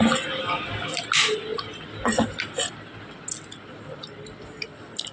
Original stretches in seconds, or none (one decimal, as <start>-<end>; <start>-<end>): 0.0-5.1